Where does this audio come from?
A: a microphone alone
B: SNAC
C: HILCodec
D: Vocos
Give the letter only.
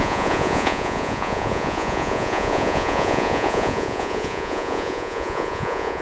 D